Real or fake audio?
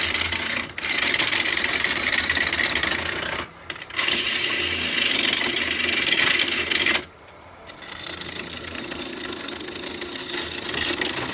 real